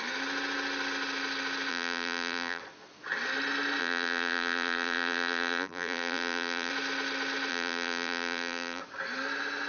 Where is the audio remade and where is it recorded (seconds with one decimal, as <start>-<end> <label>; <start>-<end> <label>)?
0.0-1.7 recorded; 1.7-2.6 remade; 2.6-3.8 recorded; 3.8-6.7 remade; 6.7-7.5 recorded; 7.5-8.8 remade; 8.8-9.7 recorded